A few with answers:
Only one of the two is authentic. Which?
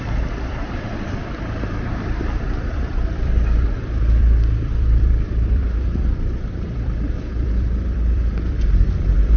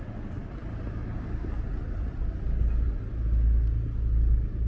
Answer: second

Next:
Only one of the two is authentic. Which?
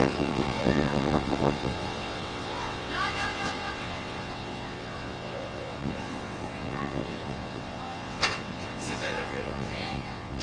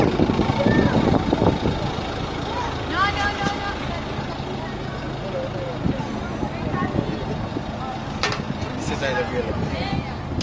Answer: second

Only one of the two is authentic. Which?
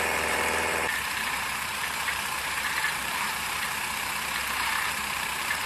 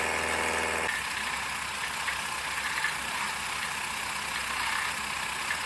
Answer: second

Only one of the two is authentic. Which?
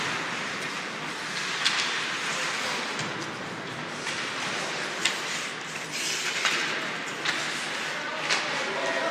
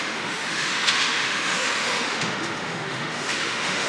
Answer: first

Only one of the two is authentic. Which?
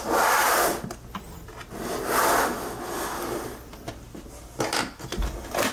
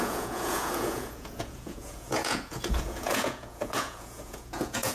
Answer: first